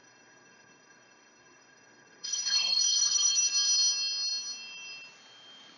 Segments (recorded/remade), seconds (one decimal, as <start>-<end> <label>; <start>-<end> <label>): 0.0-3.3 remade; 3.3-5.8 recorded